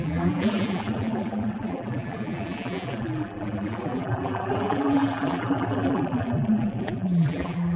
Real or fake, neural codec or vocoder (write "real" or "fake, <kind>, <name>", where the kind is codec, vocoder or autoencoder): fake, vocoder, BigVGAN v2